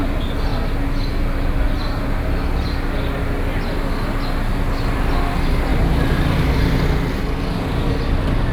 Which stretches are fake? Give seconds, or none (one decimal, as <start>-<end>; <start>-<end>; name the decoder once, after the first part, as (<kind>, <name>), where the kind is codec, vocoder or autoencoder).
none